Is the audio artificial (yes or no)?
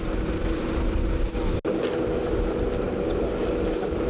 no